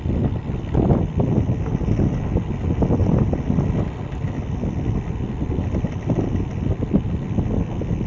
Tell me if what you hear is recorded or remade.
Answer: recorded